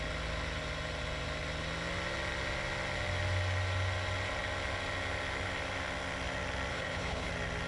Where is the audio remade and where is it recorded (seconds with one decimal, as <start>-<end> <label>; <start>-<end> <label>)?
0.0-6.7 recorded; 6.7-7.3 remade; 7.3-7.7 recorded